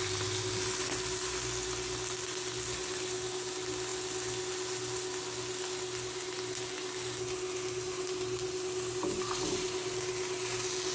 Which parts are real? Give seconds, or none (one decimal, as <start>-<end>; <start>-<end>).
0.0-10.9